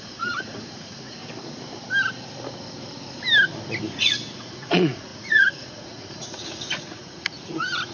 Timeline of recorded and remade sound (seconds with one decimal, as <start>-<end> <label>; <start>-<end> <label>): 0.0-1.2 remade; 1.2-3.9 recorded; 3.9-7.9 remade